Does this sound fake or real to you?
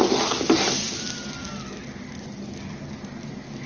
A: real